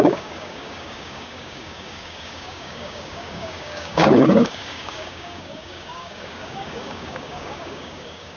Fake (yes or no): yes